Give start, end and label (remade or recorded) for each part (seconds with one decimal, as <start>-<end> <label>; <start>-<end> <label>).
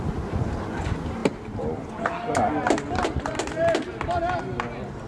0.0-5.1 recorded